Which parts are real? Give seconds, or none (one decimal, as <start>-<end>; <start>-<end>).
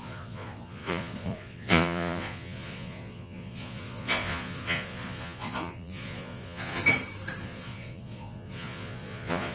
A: 6.8-7.4